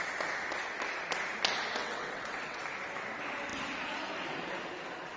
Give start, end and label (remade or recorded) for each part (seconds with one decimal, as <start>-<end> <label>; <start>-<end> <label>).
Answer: 0.0-1.8 recorded; 1.8-2.6 remade; 2.6-5.2 recorded